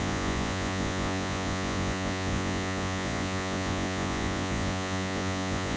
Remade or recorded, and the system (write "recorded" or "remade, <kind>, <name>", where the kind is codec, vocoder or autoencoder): remade, vocoder, Vocos